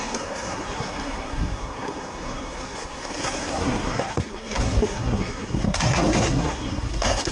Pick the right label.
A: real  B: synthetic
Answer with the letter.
B